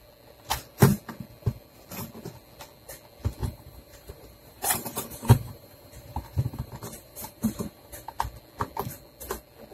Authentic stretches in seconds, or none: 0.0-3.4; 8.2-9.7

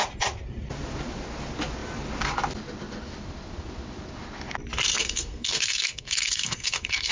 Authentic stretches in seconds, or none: 0.0-4.9

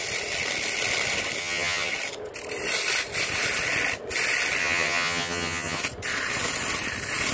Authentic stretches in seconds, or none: 0.0-1.4; 1.9-4.6; 5.8-7.3

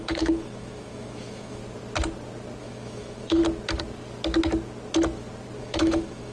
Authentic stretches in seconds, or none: 1.6-2.6; 3.4-5.6

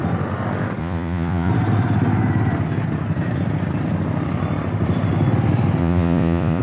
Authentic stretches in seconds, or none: 0.0-0.8; 1.5-5.8